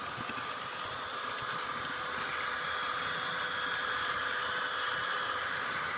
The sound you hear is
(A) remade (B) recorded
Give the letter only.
B